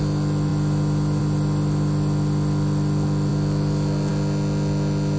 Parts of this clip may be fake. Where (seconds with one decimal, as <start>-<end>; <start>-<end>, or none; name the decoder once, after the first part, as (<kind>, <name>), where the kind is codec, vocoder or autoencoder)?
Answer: none